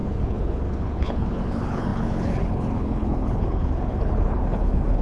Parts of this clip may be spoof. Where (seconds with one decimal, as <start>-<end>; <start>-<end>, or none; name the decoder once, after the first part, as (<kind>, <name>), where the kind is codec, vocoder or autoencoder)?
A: 0.0-5.0 (codec, HILCodec)